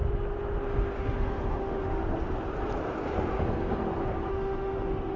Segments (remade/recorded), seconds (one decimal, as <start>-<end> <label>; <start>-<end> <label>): 0.0-1.0 recorded; 1.0-2.0 remade; 2.0-4.3 recorded; 4.3-5.2 remade